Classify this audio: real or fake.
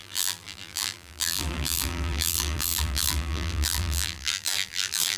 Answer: fake